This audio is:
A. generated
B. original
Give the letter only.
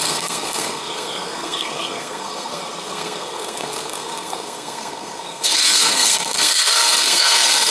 A